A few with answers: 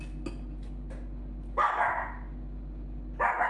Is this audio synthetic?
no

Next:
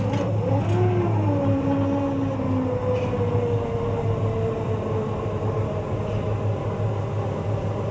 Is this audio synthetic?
no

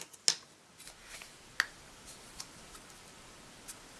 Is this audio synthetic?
no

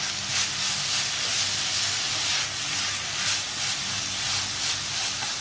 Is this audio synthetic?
no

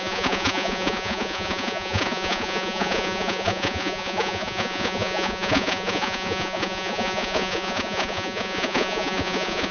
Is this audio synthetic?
yes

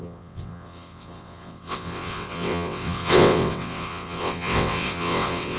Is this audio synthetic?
yes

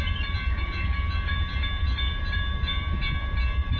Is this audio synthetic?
yes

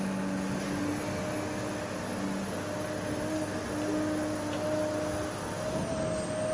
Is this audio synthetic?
no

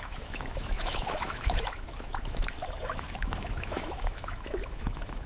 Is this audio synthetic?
yes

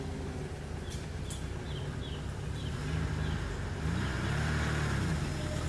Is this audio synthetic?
no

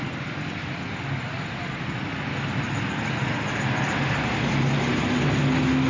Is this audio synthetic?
no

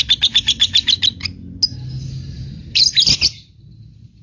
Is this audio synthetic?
no